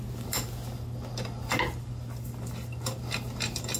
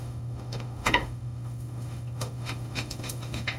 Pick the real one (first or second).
first